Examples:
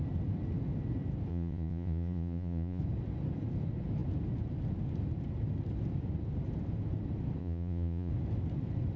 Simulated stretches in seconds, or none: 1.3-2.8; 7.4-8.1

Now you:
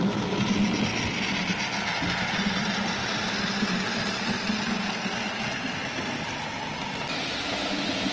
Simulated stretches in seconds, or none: none

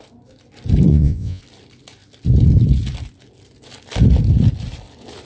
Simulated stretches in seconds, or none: 0.9-1.4

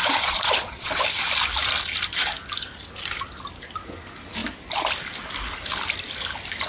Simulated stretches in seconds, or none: 0.0-1.0

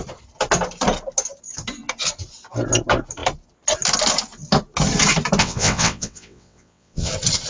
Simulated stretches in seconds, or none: 5.4-7.1

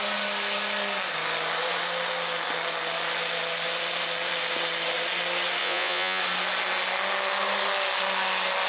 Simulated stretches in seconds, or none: 5.6-6.2